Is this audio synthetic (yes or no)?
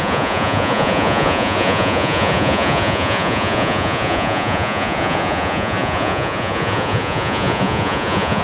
yes